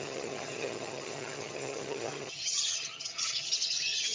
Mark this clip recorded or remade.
remade